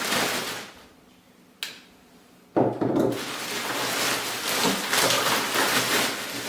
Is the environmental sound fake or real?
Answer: real